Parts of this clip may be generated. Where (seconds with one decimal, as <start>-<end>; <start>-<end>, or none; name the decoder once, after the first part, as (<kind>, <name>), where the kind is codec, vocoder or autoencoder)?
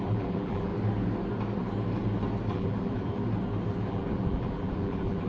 0.0-0.7 (vocoder, BigVGAN v2); 2.5-3.1; 3.7-5.3